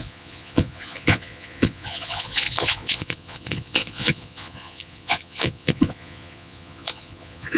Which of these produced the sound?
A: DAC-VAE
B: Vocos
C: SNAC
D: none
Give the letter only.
B